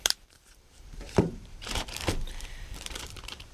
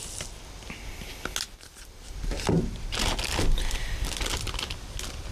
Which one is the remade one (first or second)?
first